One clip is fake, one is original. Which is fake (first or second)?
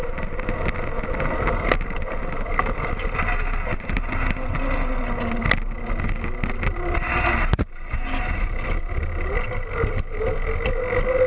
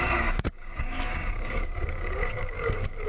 second